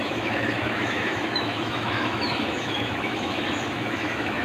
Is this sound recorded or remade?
remade